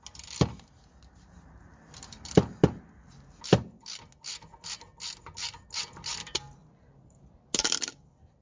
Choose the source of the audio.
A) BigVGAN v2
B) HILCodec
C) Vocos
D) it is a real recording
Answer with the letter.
D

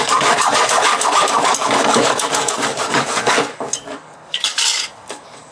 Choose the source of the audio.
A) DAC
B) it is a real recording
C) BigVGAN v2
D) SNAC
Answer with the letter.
A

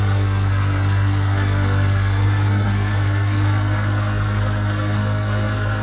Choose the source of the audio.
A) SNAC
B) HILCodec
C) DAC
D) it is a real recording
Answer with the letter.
A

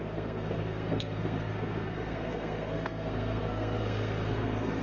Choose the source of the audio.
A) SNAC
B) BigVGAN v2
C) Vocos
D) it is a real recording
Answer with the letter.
A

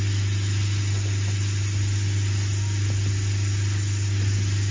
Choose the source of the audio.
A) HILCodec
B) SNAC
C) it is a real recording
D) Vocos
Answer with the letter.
C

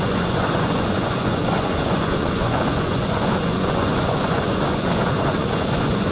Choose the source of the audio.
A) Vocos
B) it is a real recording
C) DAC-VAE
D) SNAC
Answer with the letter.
A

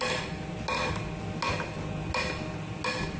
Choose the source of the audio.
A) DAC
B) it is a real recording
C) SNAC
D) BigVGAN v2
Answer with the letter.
B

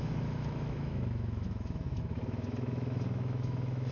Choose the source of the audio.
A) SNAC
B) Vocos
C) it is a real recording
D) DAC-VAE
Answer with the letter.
D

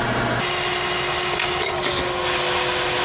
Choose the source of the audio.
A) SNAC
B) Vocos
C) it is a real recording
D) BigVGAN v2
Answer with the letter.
C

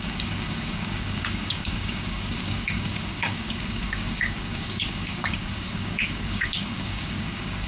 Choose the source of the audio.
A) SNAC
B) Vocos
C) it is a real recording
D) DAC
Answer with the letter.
D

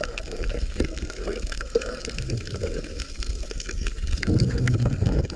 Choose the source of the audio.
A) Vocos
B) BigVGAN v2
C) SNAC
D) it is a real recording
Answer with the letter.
C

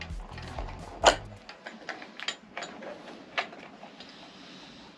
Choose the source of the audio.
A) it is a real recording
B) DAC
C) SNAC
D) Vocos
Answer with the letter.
A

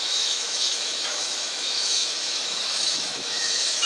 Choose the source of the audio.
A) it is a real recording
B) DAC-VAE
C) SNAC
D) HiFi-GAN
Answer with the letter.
B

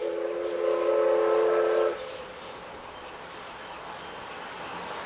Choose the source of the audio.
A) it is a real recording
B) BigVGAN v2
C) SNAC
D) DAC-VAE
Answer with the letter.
A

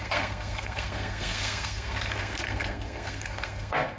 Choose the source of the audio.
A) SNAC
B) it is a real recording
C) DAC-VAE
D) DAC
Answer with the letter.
A